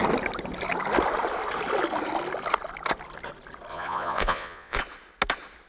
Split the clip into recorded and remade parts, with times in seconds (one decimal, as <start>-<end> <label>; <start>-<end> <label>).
0.0-3.7 recorded; 3.7-4.8 remade; 4.8-5.7 recorded